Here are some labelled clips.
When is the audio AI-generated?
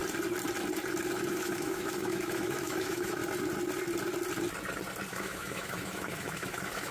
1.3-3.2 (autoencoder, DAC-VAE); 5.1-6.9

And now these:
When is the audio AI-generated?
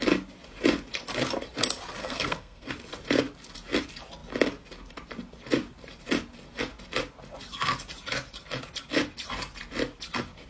2.0-2.7 (codec, SNAC)